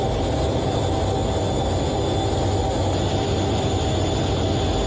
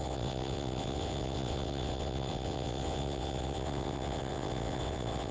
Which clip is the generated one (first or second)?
second